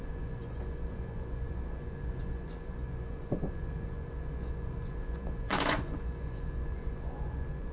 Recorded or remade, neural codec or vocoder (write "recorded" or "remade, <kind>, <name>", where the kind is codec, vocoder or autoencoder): remade, vocoder, Vocos